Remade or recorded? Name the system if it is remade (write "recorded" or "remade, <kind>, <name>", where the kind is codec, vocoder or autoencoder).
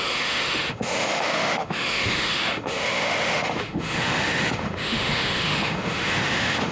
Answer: remade, autoencoder, DAC-VAE